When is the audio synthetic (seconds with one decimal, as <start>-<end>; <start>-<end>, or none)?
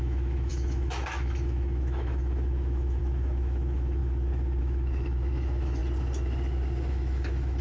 0.0-4.0; 4.6-5.8; 6.9-7.6